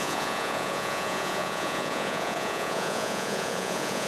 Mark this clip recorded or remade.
remade